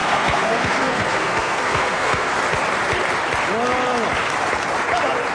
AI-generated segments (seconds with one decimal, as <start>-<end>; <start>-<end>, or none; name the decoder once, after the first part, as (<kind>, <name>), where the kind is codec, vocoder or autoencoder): 0.0-2.3 (codec, SNAC)

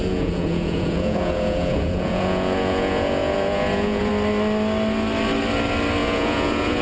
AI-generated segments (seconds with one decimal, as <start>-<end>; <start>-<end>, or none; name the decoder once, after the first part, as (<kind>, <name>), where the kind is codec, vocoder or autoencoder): 0.0-4.1 (vocoder, Vocos); 6.0-6.8

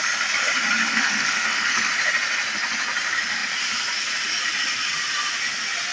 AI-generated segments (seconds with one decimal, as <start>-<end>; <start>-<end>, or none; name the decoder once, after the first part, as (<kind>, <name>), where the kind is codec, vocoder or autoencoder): 0.9-1.9 (codec, SNAC)

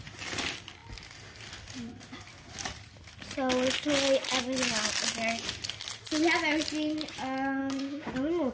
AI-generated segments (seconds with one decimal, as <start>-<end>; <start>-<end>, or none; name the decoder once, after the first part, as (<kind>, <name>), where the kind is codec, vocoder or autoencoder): 7.6-8.1 (codec, DAC)

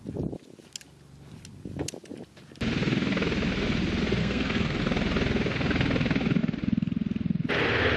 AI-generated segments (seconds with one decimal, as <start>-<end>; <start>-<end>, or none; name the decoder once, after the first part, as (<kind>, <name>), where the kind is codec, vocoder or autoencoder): 4.2-4.8 (codec, SNAC)

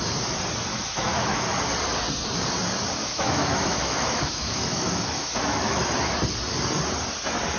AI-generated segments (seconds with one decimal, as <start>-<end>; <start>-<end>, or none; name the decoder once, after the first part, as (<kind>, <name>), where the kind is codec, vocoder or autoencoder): 0.7-1.6 (autoencoder, DAC-VAE); 3.0-5.8